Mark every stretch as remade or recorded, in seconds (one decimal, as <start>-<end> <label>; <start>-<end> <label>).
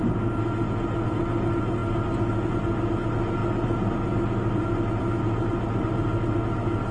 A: 0.0-6.9 recorded